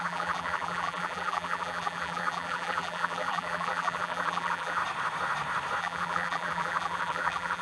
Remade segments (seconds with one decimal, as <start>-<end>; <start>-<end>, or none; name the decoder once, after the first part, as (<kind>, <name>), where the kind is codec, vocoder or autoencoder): 0.0-4.8 (vocoder, BigVGAN v2); 5.8-7.6